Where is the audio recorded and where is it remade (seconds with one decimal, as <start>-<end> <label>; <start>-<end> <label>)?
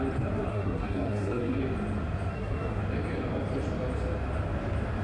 0.0-0.5 recorded; 0.5-1.6 remade; 1.6-2.3 recorded; 2.3-2.8 remade; 2.8-5.0 recorded